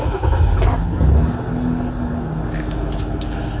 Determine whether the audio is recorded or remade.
recorded